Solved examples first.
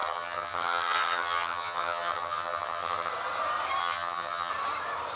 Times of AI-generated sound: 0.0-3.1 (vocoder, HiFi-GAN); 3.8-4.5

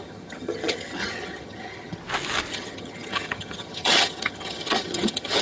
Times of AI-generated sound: 0.0-2.0 (vocoder, HiFi-GAN); 2.5-5.4

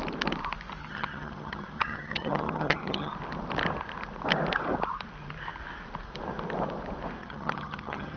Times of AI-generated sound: 0.8-3.1 (vocoder, HiFi-GAN); 7.2-8.2

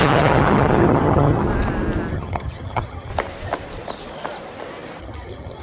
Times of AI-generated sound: 0.0-1.5 (vocoder, HiFi-GAN); 2.1-3.1; 5.0-5.6